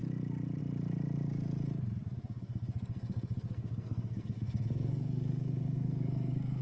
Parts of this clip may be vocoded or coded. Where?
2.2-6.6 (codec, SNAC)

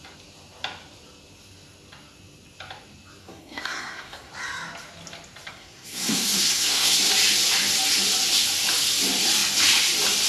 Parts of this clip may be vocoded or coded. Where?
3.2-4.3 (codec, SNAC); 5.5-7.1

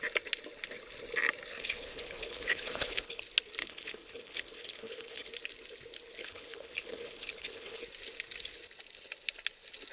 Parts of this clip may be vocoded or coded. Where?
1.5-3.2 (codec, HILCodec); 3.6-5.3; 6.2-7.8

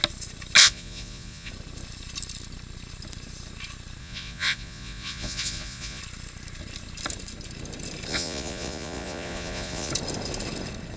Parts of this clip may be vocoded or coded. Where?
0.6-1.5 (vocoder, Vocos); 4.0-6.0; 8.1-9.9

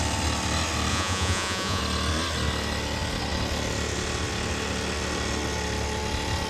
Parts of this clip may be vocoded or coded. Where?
0.9-1.8 (vocoder, Vocos)

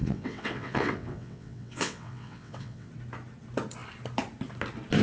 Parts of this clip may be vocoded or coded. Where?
0.0-2.9 (vocoder, WaveNeXt)

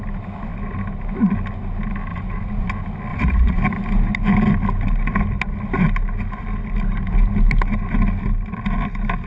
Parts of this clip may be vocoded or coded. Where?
2.1-2.7 (vocoder, Vocos); 3.1-3.6

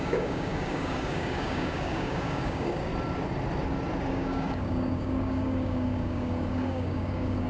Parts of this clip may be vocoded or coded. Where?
0.0-2.9 (codec, DAC); 4.1-7.5